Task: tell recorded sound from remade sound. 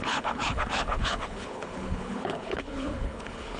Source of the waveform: remade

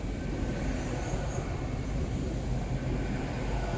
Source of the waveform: recorded